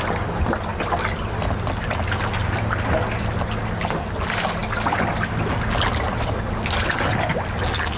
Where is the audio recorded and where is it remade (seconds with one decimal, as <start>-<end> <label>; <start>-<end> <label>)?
0.0-8.0 recorded